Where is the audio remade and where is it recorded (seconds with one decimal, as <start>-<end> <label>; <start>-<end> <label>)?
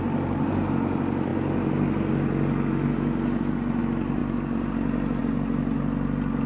0.0-6.5 recorded